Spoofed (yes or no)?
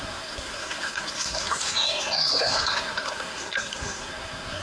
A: yes